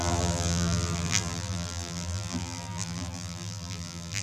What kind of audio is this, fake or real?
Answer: fake